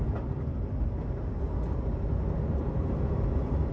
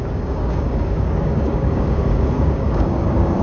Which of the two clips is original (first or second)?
first